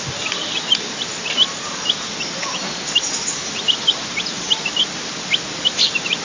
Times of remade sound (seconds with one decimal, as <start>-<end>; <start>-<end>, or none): none

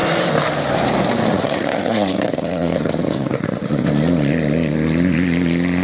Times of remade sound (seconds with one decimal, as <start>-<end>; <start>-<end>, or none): 1.3-3.9

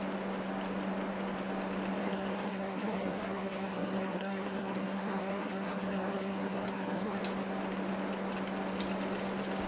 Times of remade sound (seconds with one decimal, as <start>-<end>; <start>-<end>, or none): 2.0-7.2

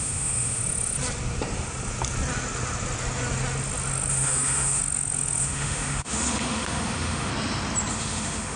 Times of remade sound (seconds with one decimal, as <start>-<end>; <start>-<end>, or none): 0.0-0.6; 4.1-4.8; 5.4-7.3; 7.9-8.6

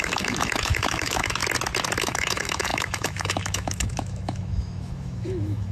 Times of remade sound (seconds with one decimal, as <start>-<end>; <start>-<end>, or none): 0.0-1.4; 2.0-5.7

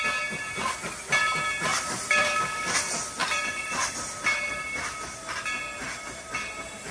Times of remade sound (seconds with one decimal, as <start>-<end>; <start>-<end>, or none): 1.7-2.4; 3.2-3.9

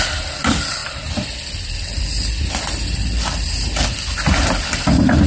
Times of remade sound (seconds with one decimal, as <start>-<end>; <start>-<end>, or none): none